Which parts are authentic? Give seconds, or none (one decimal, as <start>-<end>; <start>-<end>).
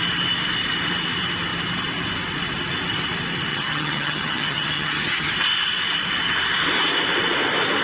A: 0.0-3.5; 5.3-7.8